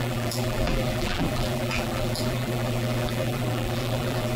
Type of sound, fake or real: fake